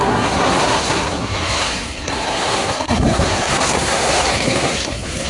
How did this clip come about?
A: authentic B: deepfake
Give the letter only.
B